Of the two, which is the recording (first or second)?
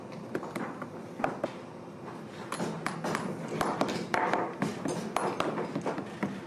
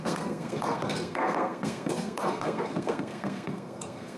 first